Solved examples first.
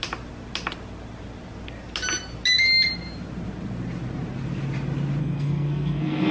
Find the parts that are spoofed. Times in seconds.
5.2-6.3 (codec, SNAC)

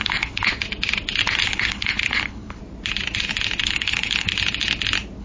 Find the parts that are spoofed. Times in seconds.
0.0-0.5 (codec, HILCodec); 1.4-2.6; 3.6-4.3

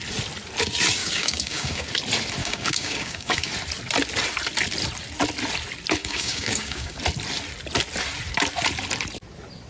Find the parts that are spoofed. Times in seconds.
1.0-1.9 (codec, DAC); 2.4-3.5; 6.0-7.0

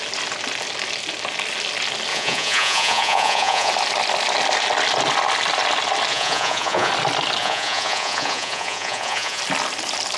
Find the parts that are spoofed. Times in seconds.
2.1-3.7 (vocoder, Vocos); 6.1-6.9; 7.4-9.4

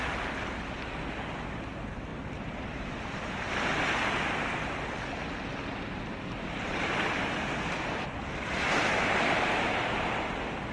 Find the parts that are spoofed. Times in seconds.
2.1-3.5 (vocoder, BigVGAN v2)

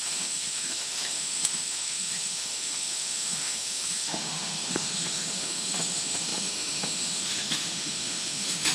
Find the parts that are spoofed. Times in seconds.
0.0-8.7 (autoencoder, DAC-VAE)